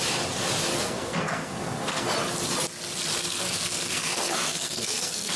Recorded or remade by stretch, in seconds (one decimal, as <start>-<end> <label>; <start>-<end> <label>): 0.0-0.7 recorded; 0.7-2.1 remade; 2.1-3.2 recorded; 3.2-5.4 remade